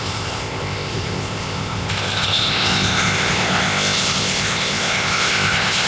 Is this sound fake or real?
fake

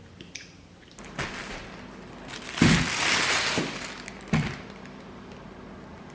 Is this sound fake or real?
real